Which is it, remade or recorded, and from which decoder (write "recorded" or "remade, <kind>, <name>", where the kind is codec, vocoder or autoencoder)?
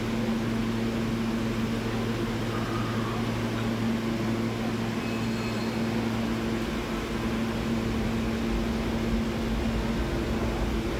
recorded